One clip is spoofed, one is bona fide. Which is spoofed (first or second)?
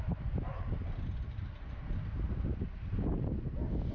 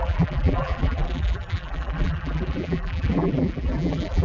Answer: second